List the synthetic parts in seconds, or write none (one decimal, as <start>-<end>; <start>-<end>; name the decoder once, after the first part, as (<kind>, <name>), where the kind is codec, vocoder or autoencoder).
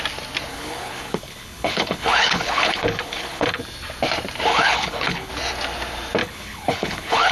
0.5-3.6 (codec, HILCodec); 4.5-5.3; 6.2-7.3